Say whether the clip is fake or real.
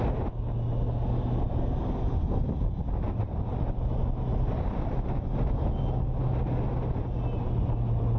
real